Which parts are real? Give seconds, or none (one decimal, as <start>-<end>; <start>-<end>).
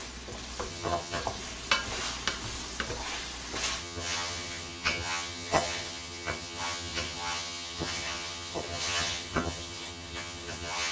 0.0-0.7; 1.2-3.8